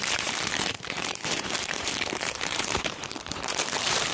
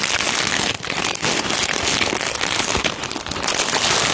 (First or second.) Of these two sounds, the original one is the second